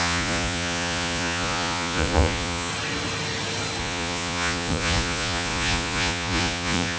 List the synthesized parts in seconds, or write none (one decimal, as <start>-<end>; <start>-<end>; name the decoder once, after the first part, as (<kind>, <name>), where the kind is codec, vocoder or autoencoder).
0.0-2.7 (vocoder, Vocos); 3.8-7.0